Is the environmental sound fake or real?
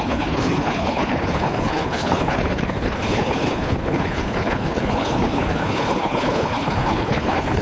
fake